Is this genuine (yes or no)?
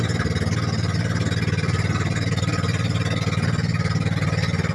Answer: yes